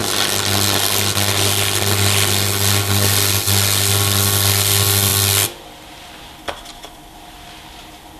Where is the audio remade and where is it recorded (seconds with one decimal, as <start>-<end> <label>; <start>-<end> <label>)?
0.0-8.2 recorded